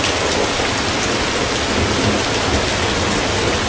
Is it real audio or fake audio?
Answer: real